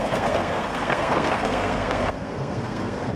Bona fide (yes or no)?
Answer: no